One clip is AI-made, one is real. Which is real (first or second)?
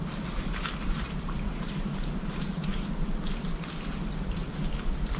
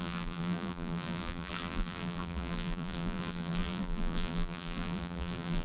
first